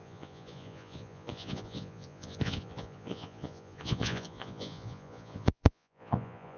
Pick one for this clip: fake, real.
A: fake